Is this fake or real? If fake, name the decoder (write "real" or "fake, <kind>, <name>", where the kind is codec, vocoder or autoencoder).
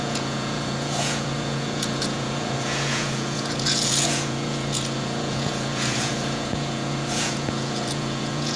fake, vocoder, Vocos